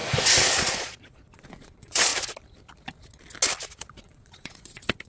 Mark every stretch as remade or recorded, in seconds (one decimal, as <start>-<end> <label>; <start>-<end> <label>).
0.0-0.8 recorded; 0.8-2.1 remade; 2.1-3.7 recorded; 3.7-5.1 remade